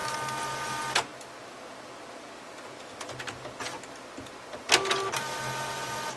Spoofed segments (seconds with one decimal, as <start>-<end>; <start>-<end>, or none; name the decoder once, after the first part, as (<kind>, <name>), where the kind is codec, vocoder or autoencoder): none